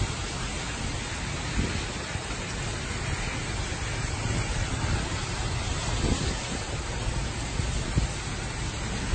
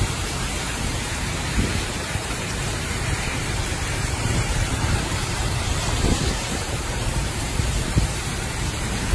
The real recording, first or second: first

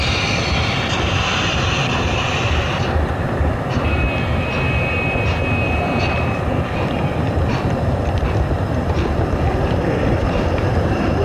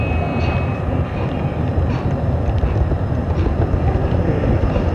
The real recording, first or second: second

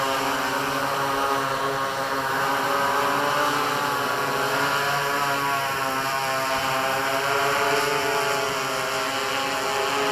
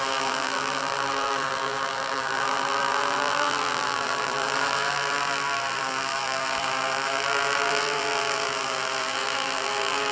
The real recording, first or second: first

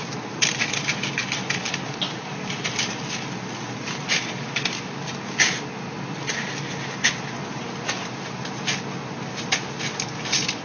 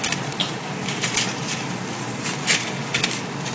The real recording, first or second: first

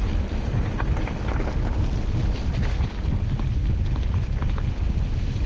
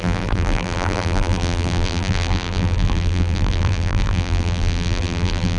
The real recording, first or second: first